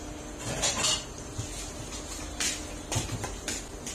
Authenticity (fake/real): real